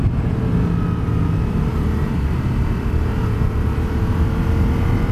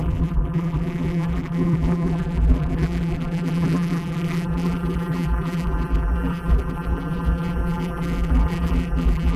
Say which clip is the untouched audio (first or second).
first